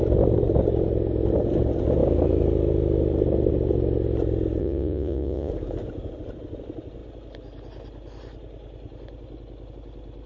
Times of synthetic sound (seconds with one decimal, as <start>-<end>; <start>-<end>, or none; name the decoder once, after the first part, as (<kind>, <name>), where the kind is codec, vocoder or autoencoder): 4.6-5.5 (vocoder, Vocos)

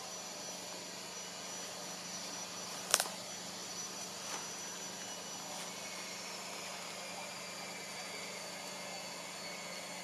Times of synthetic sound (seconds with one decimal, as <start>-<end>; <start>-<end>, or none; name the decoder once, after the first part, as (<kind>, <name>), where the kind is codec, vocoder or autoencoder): none

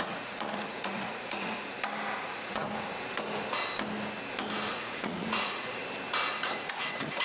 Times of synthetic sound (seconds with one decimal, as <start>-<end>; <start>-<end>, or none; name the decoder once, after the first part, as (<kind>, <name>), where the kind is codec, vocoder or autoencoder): 0.0-1.7 (vocoder, Vocos); 2.2-2.9; 4.7-5.8; 6.3-7.2